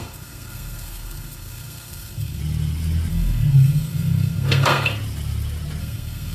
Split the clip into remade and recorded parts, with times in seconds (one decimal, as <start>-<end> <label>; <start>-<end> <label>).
0.0-2.4 remade; 2.4-3.1 recorded; 3.1-5.0 remade; 5.0-5.8 recorded; 5.8-6.3 remade